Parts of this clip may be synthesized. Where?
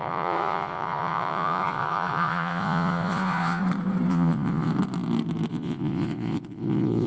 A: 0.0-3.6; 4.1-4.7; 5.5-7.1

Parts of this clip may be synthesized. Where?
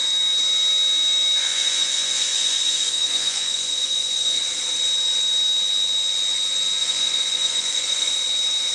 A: 1.4-4.4; 6.8-8.1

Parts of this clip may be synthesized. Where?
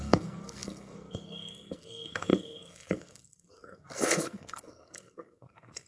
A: 0.0-5.9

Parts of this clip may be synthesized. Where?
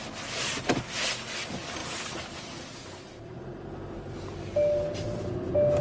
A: none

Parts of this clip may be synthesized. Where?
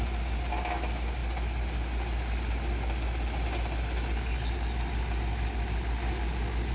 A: none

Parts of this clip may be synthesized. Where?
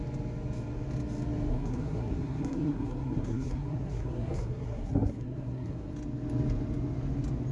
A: 1.5-5.9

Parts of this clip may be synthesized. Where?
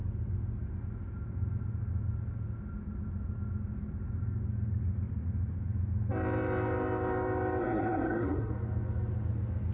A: 7.6-8.5